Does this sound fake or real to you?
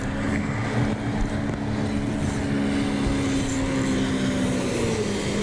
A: real